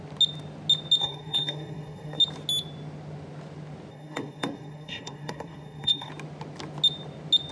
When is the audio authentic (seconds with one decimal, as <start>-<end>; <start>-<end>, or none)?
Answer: 0.0-1.0; 2.2-3.9; 6.1-7.5